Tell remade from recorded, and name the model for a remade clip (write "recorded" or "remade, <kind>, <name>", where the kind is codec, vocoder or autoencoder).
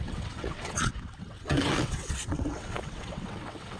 remade, vocoder, WaveNeXt